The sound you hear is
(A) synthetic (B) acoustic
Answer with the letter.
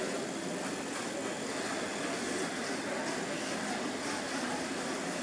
B